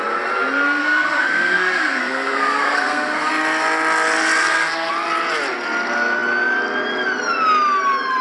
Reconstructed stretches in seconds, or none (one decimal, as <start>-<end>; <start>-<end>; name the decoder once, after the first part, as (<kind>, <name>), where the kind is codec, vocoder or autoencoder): 0.8-3.3 (codec, SNAC); 4.4-4.9

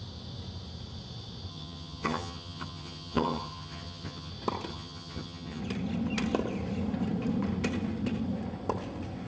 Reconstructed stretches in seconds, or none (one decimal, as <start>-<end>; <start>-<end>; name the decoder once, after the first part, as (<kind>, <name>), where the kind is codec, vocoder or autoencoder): 1.5-4.3 (vocoder, HiFi-GAN); 4.7-5.6

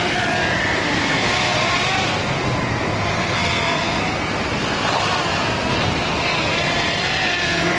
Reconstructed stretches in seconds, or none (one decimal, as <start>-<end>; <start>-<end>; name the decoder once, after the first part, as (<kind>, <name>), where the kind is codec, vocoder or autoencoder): 3.1-4.0 (codec, SNAC)

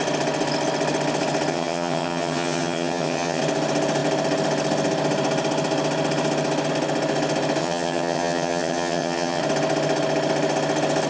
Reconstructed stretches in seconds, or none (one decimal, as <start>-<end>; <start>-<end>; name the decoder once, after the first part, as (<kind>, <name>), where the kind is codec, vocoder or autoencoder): 1.5-3.4 (vocoder, HiFi-GAN); 7.6-9.4

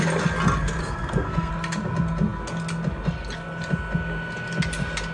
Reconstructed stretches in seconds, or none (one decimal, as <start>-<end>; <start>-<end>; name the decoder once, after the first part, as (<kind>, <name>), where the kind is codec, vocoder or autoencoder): 0.8-1.5 (codec, SNAC)

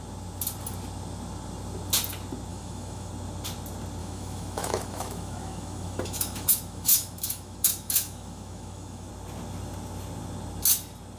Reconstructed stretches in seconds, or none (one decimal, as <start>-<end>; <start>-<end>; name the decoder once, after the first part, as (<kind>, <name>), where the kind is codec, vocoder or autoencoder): 2.5-3.1 (autoencoder, DAC-VAE); 4.0-9.1

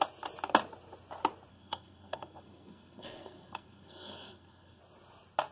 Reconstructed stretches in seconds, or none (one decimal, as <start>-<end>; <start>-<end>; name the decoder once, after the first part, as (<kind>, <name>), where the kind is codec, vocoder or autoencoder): 1.5-4.8 (codec, SNAC)